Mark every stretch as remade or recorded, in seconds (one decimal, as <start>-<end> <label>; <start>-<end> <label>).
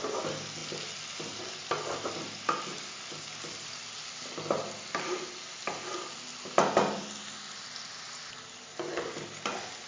0.0-9.9 recorded